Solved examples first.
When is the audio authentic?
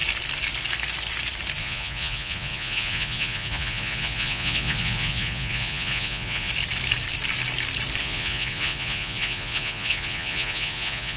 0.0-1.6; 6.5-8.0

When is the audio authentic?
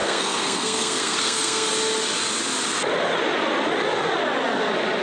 1.7-5.0